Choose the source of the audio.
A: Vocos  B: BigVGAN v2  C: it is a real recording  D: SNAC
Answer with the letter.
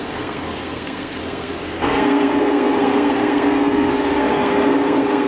D